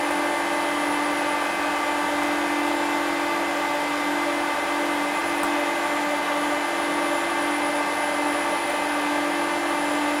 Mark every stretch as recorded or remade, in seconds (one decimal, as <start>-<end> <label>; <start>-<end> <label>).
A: 0.0-10.2 recorded